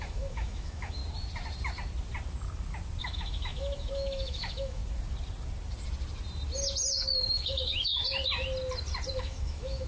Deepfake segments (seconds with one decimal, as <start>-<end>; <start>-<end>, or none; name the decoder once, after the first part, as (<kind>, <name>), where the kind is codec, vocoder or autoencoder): 0.0-1.0 (autoencoder, DAC-VAE); 3.0-4.8; 7.0-7.9; 9.2-9.9

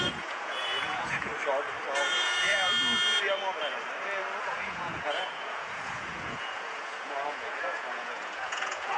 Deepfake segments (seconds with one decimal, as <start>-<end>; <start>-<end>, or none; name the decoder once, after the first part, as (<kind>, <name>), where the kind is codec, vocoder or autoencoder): 0.0-1.3 (vocoder, Vocos); 2.0-2.5; 4.4-9.0

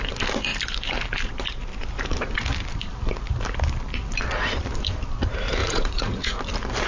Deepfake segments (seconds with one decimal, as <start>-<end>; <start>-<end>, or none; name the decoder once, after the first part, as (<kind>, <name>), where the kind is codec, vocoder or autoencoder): 5.6-6.4 (vocoder, Vocos)

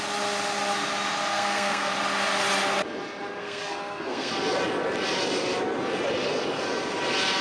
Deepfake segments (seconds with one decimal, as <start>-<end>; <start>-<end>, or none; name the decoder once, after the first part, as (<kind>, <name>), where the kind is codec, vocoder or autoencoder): 1.3-1.9 (codec, SNAC); 3.4-4.3

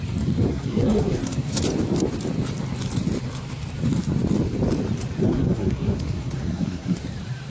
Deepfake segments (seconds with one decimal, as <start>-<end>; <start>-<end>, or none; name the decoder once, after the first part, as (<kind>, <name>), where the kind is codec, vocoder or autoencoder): 0.5-1.6 (codec, SNAC); 5.2-7.0

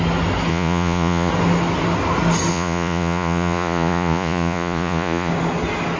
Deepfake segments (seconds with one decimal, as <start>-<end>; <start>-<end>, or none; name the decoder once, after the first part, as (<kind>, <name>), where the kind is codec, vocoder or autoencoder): 0.5-1.3 (vocoder, Vocos); 2.5-5.3